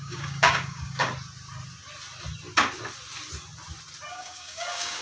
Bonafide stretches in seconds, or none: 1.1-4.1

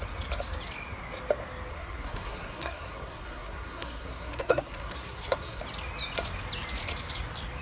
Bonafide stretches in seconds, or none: 0.0-1.7; 5.6-7.6

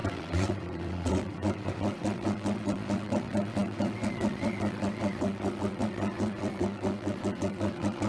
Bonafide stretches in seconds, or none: none